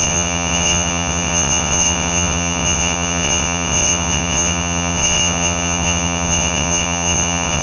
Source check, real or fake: fake